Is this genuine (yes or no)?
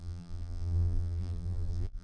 no